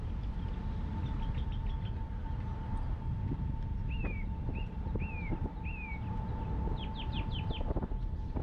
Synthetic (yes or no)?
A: no